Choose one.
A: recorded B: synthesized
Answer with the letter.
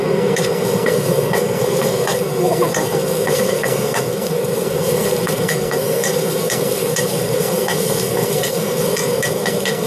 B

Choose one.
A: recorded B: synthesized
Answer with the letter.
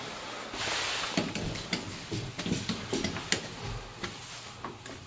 A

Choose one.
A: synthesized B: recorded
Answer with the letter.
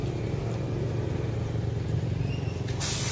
B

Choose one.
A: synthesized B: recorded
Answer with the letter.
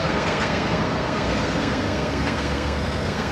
A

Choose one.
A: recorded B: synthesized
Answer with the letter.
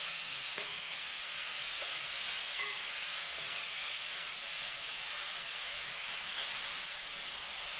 B